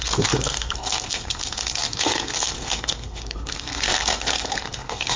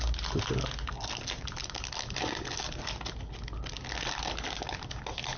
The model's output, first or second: first